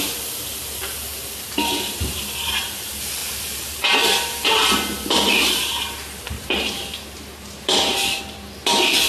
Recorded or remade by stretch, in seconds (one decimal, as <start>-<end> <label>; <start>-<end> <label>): 0.0-9.1 remade